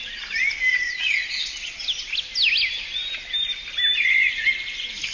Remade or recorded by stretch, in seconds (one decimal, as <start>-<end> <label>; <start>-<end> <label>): 0.0-0.7 recorded; 0.7-1.8 remade; 1.8-5.1 recorded